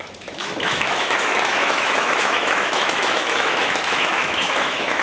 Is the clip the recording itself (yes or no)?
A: no